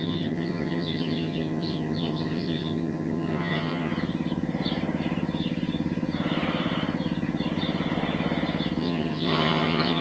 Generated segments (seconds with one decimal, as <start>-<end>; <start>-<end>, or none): 0.0-3.9; 8.8-10.0